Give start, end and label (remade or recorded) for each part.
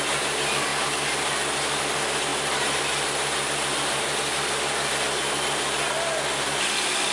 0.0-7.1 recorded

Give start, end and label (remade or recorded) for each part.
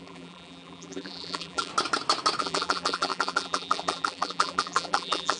0.0-1.7 remade; 1.7-2.4 recorded; 2.4-5.4 remade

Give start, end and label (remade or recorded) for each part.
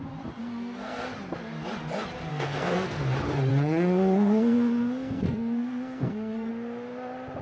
0.0-0.4 recorded; 0.4-1.1 remade; 1.1-2.3 recorded; 2.3-3.0 remade; 3.0-3.5 recorded; 3.5-6.5 remade; 6.5-7.4 recorded